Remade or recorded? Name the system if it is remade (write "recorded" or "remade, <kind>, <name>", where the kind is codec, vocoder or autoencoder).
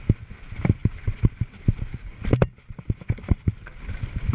recorded